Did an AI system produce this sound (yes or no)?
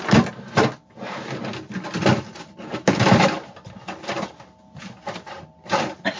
no